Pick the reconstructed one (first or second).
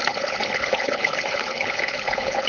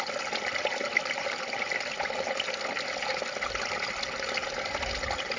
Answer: first